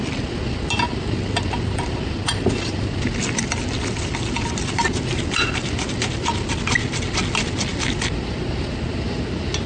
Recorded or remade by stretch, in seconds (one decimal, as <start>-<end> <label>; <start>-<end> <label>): 0.0-9.7 recorded